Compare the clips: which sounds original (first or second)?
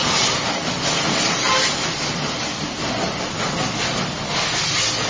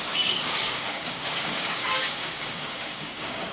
first